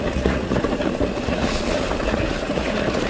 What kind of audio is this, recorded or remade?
remade